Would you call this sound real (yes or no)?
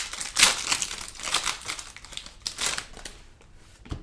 yes